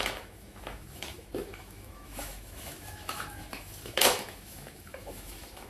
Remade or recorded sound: remade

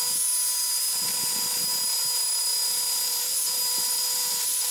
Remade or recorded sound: recorded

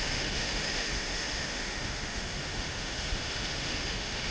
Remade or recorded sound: remade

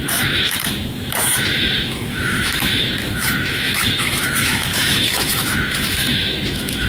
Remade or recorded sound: remade